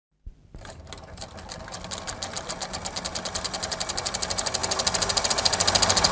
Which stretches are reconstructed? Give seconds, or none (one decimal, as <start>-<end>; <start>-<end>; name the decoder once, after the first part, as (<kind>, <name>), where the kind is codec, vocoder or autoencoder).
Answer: none